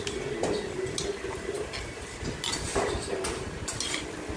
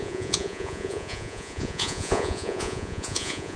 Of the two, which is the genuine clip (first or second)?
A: first